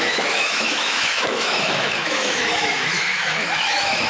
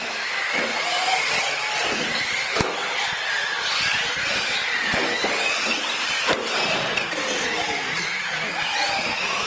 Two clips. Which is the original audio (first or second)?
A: second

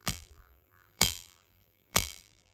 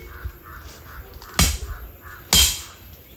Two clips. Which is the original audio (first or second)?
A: second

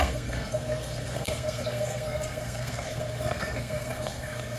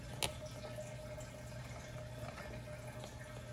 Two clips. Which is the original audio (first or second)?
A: second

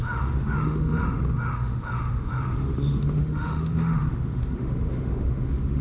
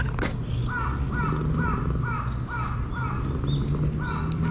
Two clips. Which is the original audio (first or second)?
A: second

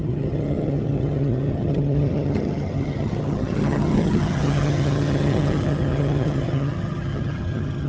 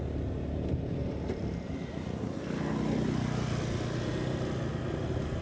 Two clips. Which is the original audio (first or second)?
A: second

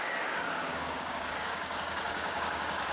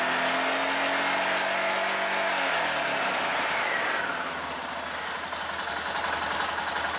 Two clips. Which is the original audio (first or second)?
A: second